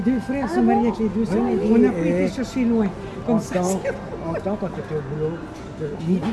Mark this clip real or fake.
real